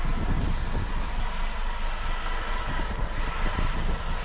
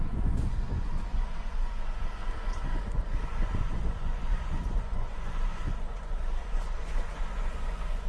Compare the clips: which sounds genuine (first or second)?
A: first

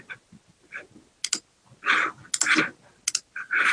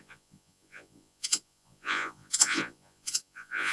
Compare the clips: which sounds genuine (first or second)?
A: first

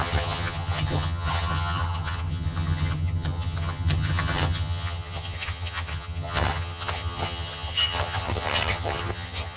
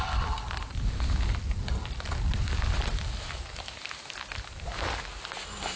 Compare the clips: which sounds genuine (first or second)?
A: second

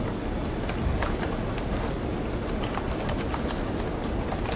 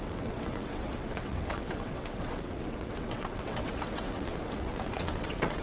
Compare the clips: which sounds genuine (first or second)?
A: first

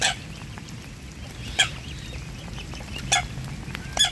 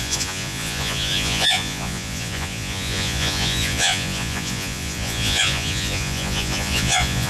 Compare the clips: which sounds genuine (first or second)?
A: first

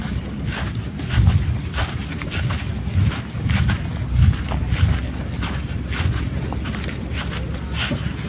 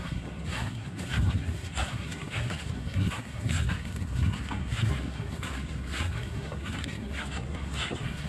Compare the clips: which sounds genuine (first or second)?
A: first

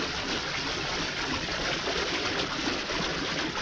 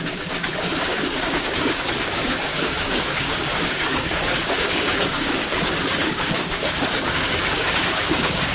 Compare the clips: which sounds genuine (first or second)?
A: first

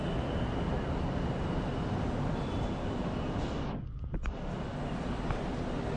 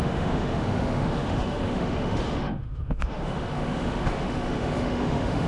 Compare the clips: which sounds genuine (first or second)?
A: first